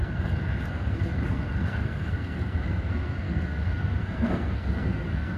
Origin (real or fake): fake